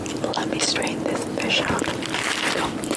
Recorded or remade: remade